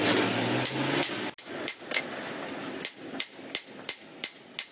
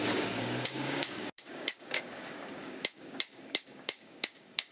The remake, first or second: second